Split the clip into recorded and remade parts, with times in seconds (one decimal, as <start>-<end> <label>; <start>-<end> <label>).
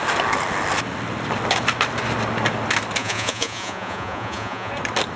0.0-3.0 recorded; 3.0-4.7 remade; 4.7-5.2 recorded